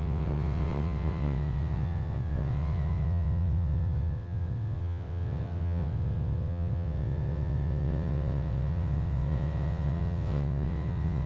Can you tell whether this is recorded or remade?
remade